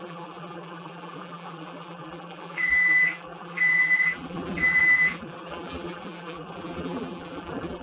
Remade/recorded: remade